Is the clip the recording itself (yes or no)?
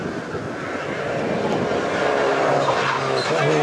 yes